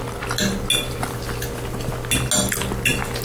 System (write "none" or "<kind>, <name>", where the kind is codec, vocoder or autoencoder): none